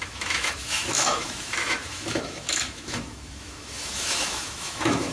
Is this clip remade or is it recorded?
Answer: remade